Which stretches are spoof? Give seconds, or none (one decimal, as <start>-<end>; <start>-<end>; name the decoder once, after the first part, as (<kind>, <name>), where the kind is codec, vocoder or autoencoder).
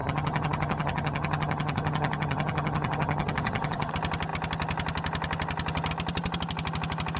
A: 0.0-3.9 (vocoder, HiFi-GAN)